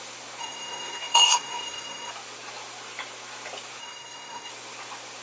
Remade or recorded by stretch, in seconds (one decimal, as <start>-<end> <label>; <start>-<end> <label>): 0.0-0.4 recorded; 0.4-2.1 remade; 2.1-3.8 recorded; 3.8-4.5 remade; 4.5-5.2 recorded